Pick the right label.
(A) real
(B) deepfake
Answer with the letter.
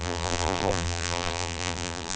B